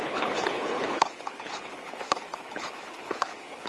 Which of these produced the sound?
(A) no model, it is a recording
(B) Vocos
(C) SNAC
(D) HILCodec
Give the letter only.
D